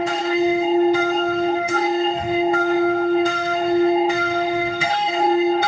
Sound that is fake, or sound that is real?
fake